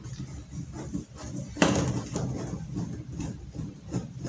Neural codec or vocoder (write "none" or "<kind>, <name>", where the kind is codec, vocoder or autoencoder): none